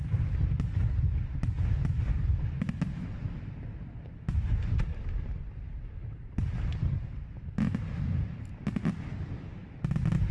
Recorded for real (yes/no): yes